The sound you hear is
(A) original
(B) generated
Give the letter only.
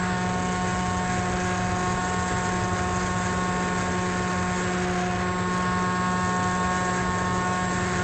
A